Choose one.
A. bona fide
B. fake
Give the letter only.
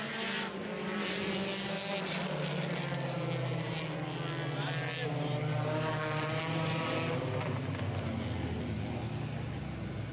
A